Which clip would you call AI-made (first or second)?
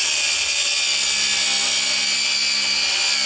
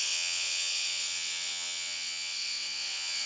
second